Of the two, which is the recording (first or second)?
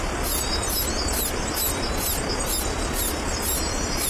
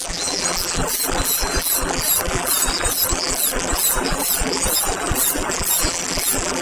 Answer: first